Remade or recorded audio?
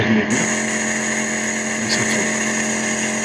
recorded